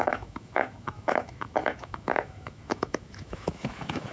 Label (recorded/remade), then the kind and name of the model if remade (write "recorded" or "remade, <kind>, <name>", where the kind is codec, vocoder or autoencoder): remade, autoencoder, DAC-VAE